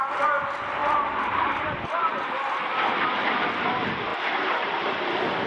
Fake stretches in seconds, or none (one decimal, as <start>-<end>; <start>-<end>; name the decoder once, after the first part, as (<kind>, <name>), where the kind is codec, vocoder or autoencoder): none